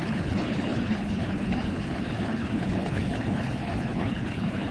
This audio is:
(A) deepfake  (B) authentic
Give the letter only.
A